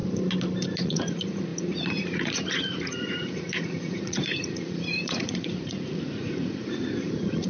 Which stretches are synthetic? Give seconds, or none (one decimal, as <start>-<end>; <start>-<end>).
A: 0.8-7.5